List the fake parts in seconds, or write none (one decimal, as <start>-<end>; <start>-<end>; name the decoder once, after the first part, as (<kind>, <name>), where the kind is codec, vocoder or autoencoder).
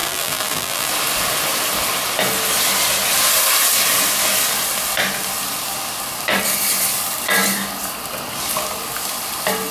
0.0-0.9 (vocoder, BigVGAN v2)